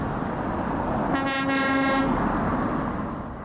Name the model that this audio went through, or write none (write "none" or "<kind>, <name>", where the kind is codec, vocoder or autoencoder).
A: none